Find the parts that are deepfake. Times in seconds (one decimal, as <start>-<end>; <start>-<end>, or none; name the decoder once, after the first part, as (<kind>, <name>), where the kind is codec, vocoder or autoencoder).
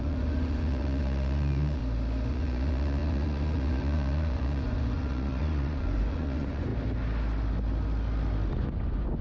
0.0-1.8 (vocoder, Vocos); 2.3-6.7; 8.5-9.2